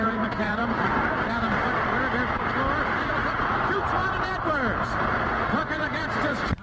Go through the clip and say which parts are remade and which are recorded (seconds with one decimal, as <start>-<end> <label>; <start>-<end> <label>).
0.0-0.6 remade; 0.6-2.9 recorded; 2.9-4.0 remade; 4.0-5.3 recorded; 5.3-6.6 remade